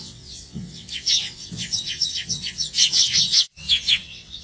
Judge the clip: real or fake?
fake